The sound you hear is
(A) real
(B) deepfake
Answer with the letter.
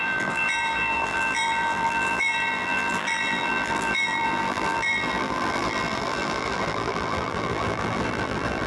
B